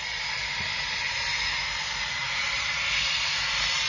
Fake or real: real